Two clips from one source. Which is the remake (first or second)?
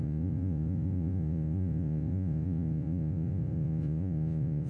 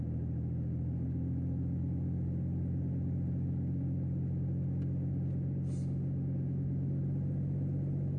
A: first